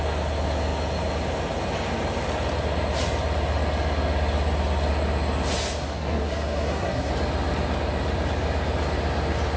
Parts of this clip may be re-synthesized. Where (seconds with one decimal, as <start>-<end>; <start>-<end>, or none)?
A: 5.8-7.1